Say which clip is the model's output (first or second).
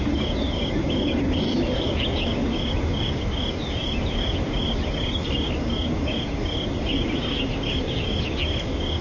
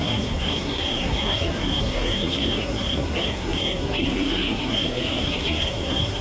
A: second